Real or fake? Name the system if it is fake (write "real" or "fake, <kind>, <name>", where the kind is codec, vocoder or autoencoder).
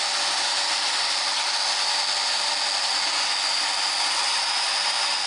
real